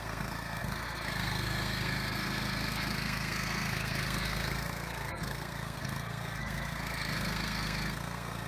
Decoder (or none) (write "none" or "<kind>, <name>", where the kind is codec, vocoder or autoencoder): codec, SNAC